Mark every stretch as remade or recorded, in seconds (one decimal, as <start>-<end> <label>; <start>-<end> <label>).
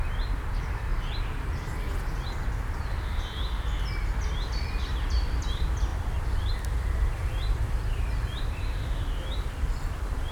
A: 0.0-0.9 remade; 0.9-4.8 recorded; 4.8-10.3 remade